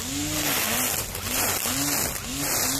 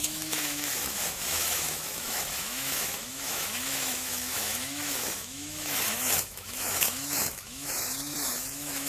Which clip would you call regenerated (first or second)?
second